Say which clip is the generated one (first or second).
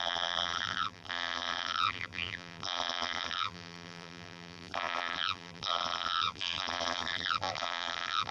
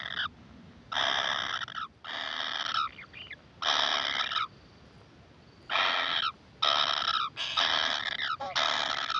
first